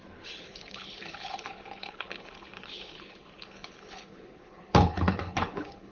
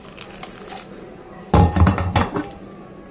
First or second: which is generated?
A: first